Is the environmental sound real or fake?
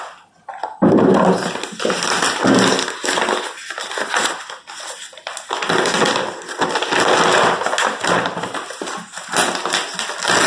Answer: real